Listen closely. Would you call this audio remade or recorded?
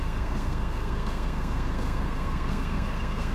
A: remade